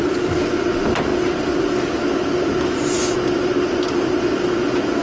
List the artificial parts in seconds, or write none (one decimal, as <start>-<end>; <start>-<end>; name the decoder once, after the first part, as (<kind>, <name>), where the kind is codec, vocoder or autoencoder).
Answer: none